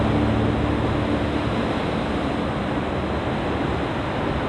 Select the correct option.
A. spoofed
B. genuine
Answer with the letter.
B